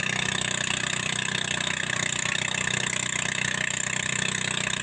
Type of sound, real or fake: real